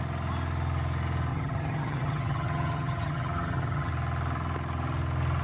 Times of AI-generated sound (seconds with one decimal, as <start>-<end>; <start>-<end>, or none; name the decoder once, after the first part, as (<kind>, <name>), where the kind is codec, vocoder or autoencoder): 1.3-3.9 (vocoder, HiFi-GAN)